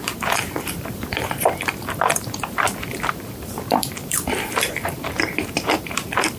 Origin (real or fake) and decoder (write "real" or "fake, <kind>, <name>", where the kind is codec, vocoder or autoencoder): fake, vocoder, BigVGAN v2